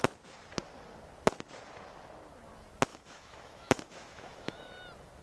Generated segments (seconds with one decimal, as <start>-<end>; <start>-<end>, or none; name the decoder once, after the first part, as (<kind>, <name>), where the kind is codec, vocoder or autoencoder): 2.9-4.7 (autoencoder, DAC-VAE)